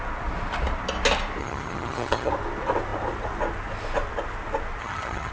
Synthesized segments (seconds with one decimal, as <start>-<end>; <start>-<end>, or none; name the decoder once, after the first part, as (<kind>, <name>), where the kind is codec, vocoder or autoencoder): 1.4-2.3 (vocoder, HiFi-GAN); 4.8-5.3